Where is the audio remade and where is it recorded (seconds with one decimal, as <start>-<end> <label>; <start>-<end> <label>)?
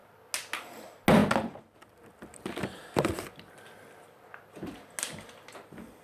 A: 0.0-6.0 recorded